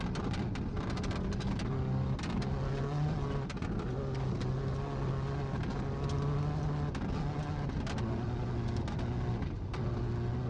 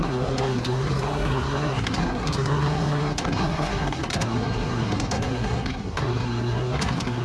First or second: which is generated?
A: second